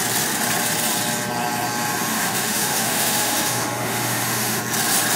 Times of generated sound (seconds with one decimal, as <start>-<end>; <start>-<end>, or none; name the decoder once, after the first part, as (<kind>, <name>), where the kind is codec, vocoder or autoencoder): 2.1-4.6 (autoencoder, DAC-VAE)